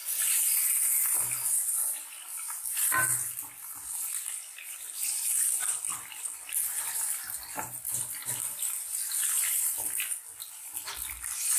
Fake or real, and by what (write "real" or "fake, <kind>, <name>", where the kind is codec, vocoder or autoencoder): real